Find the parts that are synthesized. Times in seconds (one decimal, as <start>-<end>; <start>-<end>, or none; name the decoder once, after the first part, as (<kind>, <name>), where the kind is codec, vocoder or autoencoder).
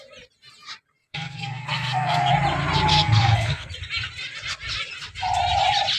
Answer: 1.0-2.3 (codec, SNAC); 2.9-3.7